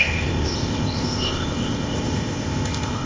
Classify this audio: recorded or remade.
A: remade